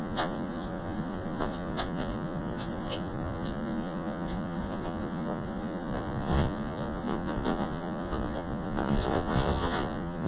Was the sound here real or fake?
fake